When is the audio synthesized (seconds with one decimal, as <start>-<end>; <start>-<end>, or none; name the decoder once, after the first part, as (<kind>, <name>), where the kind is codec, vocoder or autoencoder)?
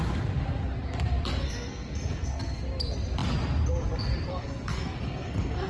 1.3-2.6 (codec, SNAC); 4.3-5.7